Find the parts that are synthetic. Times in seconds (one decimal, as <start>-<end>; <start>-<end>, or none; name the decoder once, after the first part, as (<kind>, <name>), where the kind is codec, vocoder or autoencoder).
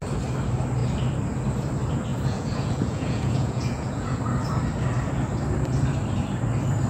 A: 2.1-4.2 (vocoder, Vocos)